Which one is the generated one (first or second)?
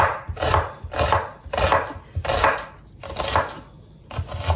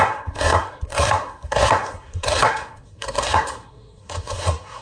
second